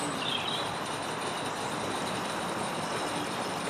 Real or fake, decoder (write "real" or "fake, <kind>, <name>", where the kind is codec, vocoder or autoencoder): fake, vocoder, BigVGAN v2